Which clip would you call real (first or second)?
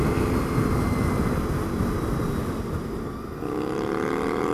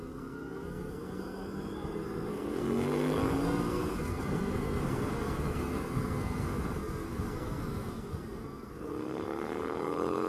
first